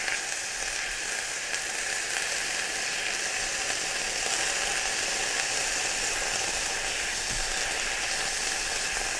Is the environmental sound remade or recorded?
recorded